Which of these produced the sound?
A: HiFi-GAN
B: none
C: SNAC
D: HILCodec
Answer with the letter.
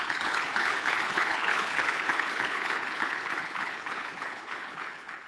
D